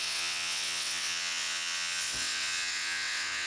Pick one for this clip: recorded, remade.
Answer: remade